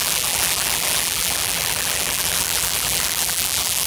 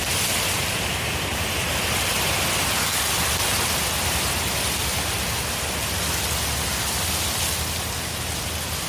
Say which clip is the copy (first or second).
first